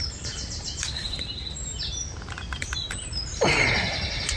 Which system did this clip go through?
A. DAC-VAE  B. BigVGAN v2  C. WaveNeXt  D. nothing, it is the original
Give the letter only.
B